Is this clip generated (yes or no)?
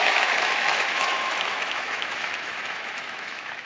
yes